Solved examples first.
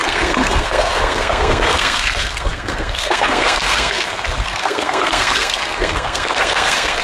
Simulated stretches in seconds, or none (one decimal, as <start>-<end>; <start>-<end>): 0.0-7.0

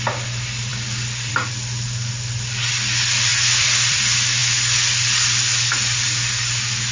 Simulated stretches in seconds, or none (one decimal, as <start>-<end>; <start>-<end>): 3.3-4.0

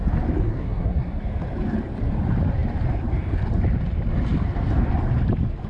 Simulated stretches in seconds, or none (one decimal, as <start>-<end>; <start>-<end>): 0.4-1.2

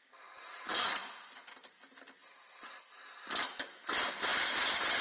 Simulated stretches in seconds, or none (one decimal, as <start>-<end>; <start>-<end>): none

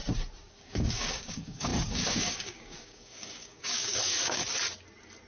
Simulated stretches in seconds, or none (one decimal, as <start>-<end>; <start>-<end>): 0.5-4.4

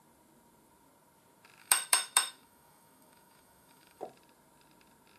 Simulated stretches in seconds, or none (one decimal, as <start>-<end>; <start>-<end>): 1.6-4.0

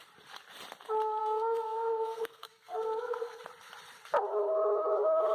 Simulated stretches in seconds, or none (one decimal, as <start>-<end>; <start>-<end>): 1.2-3.4

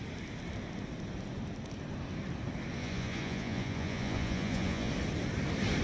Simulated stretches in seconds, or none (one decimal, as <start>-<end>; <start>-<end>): 2.8-4.9